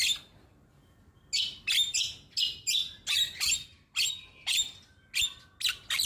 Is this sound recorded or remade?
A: recorded